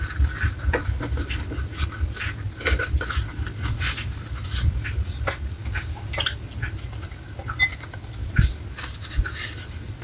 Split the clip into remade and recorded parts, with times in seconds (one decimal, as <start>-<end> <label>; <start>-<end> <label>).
0.0-5.6 recorded; 5.6-6.1 remade; 6.1-10.0 recorded